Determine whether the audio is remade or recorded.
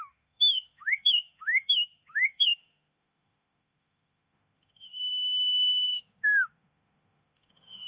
remade